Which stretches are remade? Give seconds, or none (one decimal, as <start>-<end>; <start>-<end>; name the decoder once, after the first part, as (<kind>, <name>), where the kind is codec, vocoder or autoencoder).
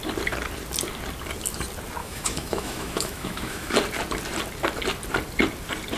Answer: 2.0-3.7 (autoencoder, DAC-VAE)